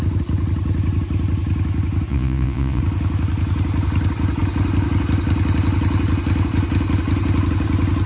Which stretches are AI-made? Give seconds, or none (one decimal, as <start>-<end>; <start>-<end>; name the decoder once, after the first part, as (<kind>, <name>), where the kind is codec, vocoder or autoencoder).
2.1-2.8 (vocoder, Vocos)

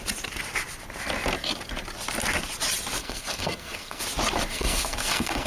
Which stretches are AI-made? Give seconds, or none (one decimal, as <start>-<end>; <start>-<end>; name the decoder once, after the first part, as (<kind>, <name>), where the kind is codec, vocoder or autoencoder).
3.0-4.0 (codec, SNAC); 4.5-5.5

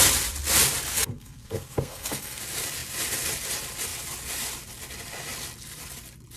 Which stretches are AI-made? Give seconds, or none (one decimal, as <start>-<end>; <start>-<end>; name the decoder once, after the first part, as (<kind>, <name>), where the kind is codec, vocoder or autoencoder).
0.9-2.4 (codec, SNAC)

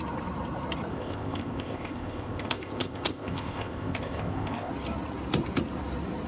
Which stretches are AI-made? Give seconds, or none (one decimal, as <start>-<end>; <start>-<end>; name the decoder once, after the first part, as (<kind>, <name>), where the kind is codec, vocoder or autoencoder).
0.9-4.7 (codec, ZipCodec)

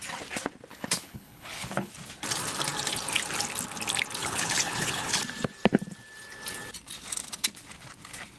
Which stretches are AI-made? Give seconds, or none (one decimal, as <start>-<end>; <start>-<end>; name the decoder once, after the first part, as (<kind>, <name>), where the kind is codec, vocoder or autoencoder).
0.7-1.9 (codec, HILCodec); 4.2-5.2

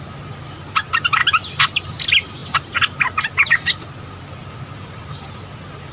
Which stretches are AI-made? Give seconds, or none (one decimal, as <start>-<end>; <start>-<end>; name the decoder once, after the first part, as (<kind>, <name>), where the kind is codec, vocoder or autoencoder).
none

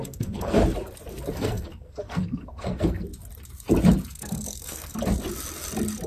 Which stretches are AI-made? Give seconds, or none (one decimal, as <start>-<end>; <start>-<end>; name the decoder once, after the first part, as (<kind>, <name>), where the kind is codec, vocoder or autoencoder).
0.0-0.6 (codec, SNAC); 1.3-3.1; 4.1-4.9

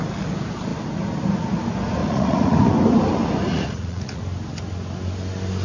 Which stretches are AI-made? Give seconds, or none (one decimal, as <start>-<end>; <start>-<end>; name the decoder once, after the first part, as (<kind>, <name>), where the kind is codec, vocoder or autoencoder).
2.0-2.7 (vocoder, Vocos); 3.5-4.2